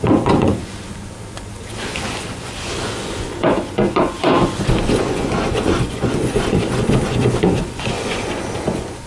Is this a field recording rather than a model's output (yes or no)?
no